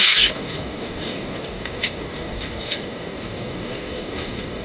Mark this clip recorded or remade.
remade